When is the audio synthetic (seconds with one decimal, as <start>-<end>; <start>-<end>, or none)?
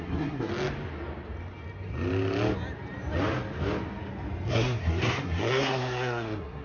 0.0-0.5; 4.5-6.6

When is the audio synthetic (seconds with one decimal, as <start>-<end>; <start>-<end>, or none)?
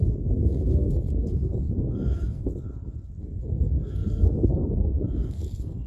0.0-2.5; 3.2-5.9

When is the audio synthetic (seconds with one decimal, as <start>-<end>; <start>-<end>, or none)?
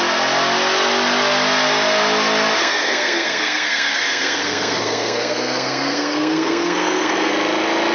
2.6-7.3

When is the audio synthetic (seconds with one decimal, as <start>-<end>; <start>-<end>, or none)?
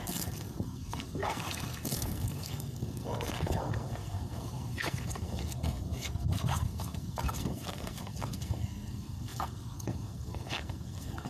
0.0-11.3